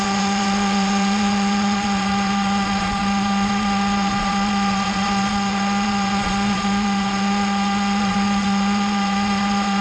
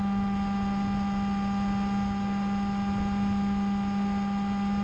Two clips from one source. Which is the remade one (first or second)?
first